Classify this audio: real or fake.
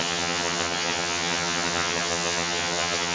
fake